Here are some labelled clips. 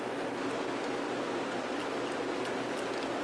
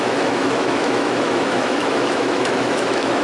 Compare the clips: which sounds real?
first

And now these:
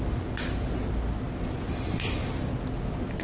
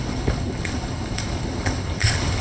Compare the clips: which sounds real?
first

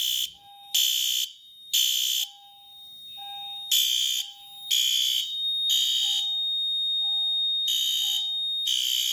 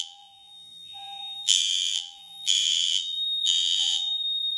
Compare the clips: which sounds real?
first